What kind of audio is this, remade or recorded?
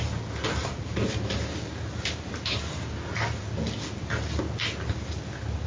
recorded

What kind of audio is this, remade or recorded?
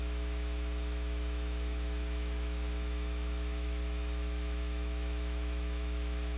remade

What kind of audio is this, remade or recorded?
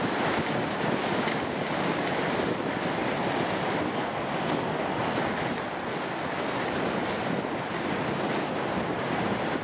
recorded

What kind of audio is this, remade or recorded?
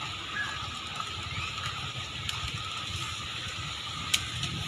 recorded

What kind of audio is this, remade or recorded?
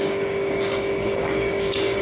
remade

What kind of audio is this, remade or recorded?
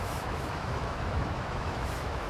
remade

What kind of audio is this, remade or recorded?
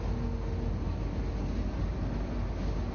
recorded